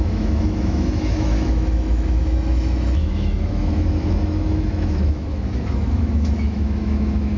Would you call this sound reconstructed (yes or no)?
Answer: yes